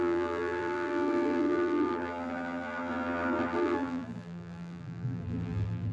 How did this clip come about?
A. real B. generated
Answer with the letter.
B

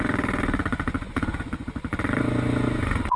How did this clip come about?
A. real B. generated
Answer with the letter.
B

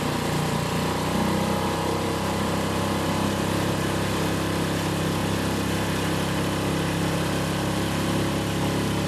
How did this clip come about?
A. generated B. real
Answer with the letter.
B